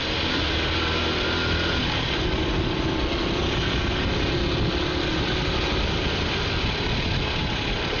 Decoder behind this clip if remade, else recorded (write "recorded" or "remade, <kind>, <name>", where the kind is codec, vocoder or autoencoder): recorded